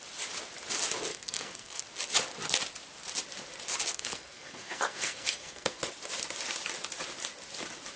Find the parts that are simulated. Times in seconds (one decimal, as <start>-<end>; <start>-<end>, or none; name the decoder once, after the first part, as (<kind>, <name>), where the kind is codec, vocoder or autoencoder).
1.1-1.8 (codec, SNAC); 3.9-5.8